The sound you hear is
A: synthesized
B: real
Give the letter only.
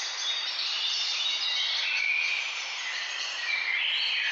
B